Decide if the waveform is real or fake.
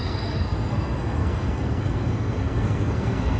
fake